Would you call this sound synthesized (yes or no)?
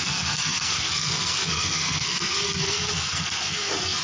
yes